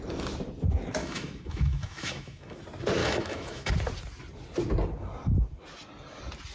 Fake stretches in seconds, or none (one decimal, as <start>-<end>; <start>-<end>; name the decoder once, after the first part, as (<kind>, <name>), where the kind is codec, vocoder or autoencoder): 1.0-2.6 (autoencoder, DAC-VAE); 3.0-3.7